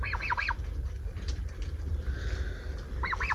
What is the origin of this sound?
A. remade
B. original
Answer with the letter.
B